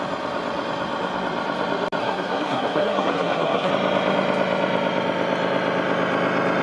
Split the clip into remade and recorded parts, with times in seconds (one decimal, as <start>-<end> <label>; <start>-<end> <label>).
0.0-2.0 recorded; 2.0-3.7 remade; 3.7-6.6 recorded